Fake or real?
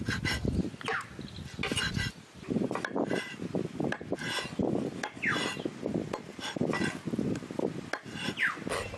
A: real